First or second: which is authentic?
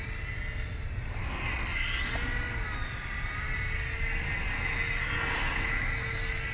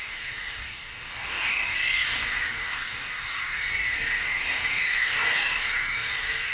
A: first